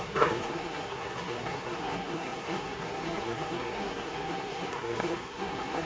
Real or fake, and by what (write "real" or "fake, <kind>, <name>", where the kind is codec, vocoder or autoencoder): fake, codec, SNAC